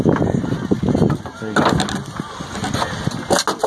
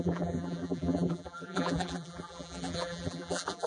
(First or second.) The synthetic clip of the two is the second